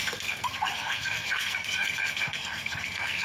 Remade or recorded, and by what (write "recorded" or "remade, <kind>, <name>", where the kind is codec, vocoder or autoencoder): remade, codec, SNAC